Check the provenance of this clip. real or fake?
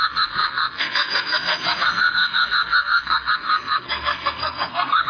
fake